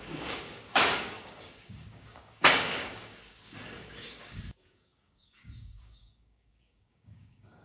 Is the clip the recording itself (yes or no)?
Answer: no